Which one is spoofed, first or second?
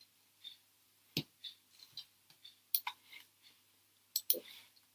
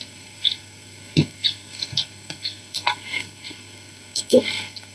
second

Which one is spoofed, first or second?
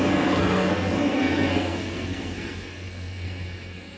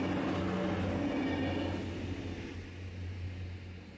first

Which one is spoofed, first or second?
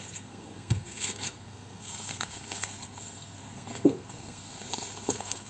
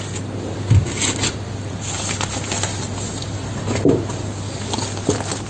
first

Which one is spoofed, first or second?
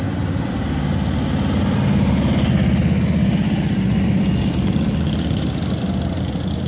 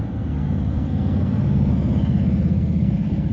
second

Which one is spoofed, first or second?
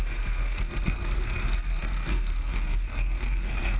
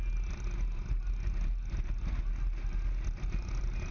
first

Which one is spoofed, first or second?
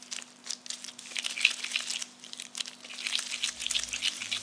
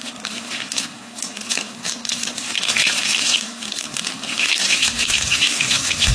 second